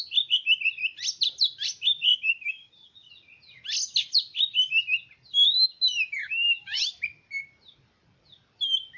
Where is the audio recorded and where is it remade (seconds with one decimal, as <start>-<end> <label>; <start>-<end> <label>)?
0.0-2.1 recorded; 2.1-3.1 remade; 3.1-6.2 recorded; 6.2-6.8 remade; 6.8-9.0 recorded